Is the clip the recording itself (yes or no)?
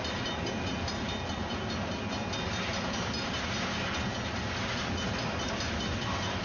yes